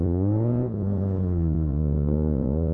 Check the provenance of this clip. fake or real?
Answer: fake